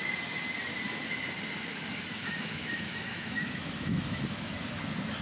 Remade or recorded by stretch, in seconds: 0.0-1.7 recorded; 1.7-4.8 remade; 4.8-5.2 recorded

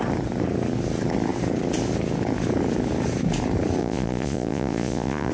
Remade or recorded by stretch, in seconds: 0.0-3.8 recorded; 3.8-5.3 remade

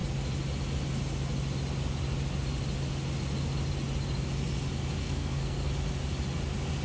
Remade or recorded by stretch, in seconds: 0.0-5.0 recorded; 5.0-5.7 remade; 5.7-6.8 recorded

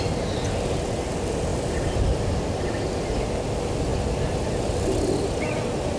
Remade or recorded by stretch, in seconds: 0.0-6.0 recorded

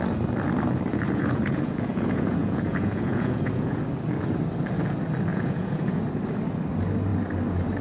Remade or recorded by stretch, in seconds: 0.0-0.9 recorded; 0.9-3.8 remade; 3.8-5.3 recorded; 5.3-6.0 remade; 6.0-7.8 recorded

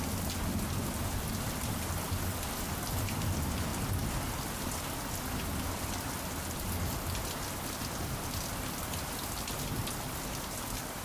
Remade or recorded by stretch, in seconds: 0.0-11.0 recorded

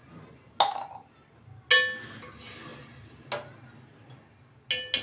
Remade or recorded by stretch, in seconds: 0.0-5.0 recorded

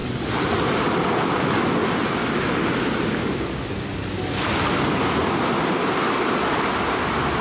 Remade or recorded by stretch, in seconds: 0.0-7.4 recorded